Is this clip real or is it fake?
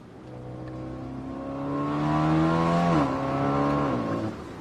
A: real